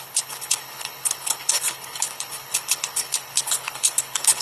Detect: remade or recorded remade